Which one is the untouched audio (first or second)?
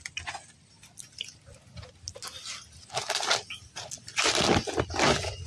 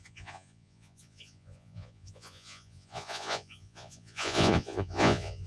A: first